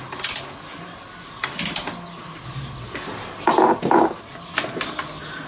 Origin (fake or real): real